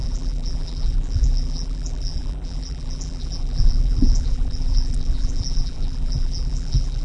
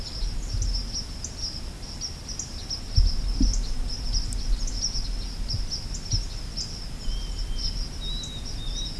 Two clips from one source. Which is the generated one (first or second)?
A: first